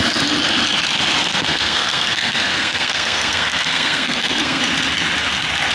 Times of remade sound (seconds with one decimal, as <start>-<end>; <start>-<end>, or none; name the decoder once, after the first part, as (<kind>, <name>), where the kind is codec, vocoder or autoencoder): 1.2-4.6 (codec, SNAC)

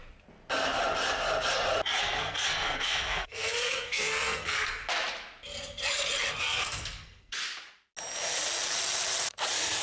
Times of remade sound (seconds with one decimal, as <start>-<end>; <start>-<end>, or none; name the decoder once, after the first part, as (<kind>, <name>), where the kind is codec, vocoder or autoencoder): 2.0-4.8 (codec, SNAC); 6.4-7.4

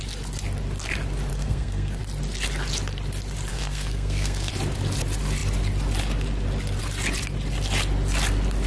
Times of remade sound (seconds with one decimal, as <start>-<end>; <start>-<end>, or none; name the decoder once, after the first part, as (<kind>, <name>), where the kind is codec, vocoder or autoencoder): 1.3-2.0 (codec, SNAC); 3.5-4.5

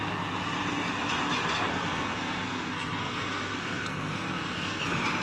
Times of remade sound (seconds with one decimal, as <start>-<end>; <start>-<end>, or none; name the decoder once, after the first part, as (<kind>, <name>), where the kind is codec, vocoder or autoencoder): 1.7-4.8 (codec, SNAC)

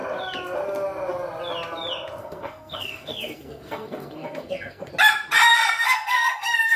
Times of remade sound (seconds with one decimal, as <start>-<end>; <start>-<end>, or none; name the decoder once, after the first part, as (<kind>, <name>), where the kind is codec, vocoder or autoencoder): 2.2-4.9 (codec, SNAC); 5.5-6.8

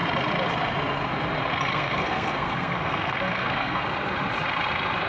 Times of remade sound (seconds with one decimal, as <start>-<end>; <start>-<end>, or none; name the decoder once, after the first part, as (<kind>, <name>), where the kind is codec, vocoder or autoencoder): 1.7-3.8 (codec, SNAC)

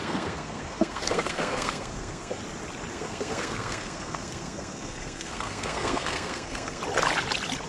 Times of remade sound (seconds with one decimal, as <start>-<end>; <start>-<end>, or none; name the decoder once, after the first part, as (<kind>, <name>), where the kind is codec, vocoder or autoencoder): 0.0-2.4 (codec, SNAC); 2.9-6.8